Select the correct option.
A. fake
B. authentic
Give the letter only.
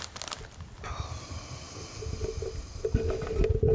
B